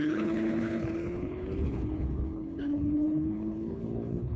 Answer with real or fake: fake